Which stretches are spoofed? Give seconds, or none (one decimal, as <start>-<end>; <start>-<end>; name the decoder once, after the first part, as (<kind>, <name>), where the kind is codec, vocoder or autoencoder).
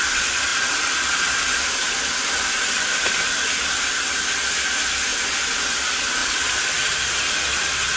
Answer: 0.5-3.6 (vocoder, BigVGAN v2); 6.2-6.9